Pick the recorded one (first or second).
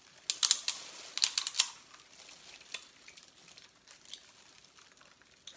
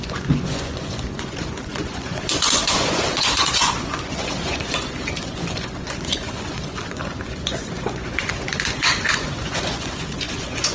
first